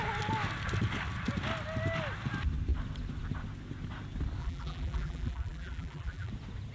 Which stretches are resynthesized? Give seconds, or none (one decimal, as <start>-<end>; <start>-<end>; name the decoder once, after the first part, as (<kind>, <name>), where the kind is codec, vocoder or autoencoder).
4.4-6.3 (vocoder, BigVGAN v2)